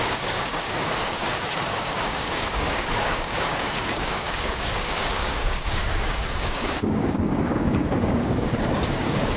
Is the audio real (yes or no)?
no